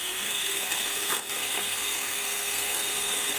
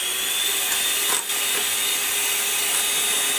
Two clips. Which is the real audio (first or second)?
second